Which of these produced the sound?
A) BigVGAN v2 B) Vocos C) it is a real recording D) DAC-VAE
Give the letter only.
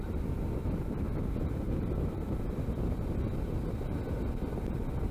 C